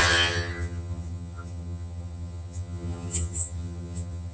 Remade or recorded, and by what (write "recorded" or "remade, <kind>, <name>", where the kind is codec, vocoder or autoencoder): remade, vocoder, HiFi-GAN